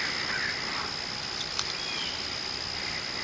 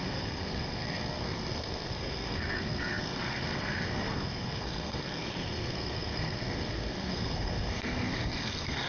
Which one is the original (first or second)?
first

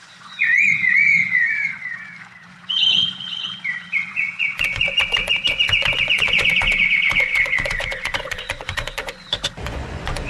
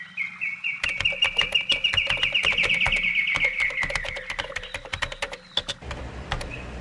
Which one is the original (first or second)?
second